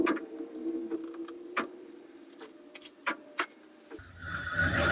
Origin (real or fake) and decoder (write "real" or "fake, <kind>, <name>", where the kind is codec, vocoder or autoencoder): fake, vocoder, BigVGAN v2